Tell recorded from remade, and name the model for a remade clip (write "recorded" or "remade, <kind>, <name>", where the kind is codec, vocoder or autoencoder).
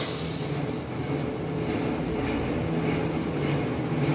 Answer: recorded